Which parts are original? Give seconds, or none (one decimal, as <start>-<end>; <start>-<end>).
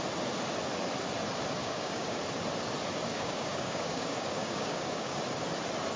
0.0-1.6; 2.2-3.1; 5.2-6.0